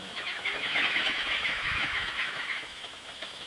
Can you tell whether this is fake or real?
fake